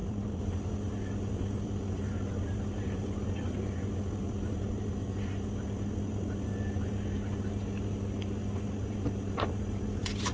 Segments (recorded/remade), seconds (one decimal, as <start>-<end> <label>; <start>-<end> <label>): 0.0-4.8 remade; 4.8-10.3 recorded